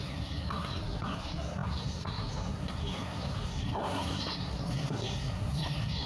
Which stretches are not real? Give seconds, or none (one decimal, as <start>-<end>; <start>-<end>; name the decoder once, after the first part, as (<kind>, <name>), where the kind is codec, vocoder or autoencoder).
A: 0.0-6.1 (codec, SNAC)